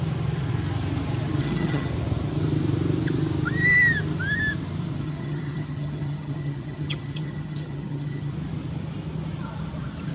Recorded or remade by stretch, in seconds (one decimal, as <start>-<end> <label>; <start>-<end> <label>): 0.0-1.4 recorded; 1.4-1.9 remade; 1.9-5.0 recorded; 5.0-8.3 remade; 8.3-10.1 recorded